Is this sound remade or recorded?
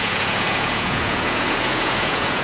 remade